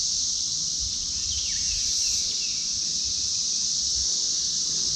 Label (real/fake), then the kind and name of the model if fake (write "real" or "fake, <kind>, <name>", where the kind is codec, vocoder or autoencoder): real